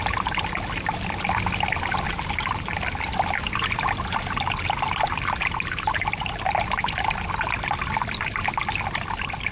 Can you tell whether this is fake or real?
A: real